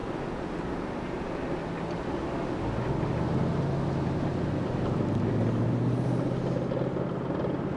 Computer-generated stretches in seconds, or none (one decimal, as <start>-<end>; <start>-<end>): none